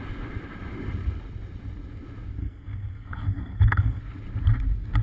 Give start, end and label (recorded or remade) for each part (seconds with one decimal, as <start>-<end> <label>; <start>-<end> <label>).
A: 0.0-2.4 recorded; 2.4-4.0 remade; 4.0-5.0 recorded